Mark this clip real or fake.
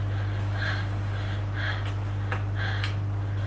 real